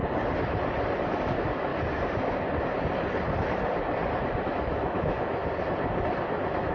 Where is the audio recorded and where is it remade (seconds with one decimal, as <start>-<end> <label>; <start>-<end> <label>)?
0.0-1.0 recorded; 1.0-1.7 remade; 1.7-4.4 recorded; 4.4-5.4 remade; 5.4-6.3 recorded; 6.3-6.7 remade